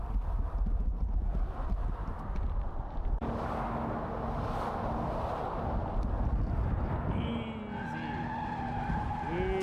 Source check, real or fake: real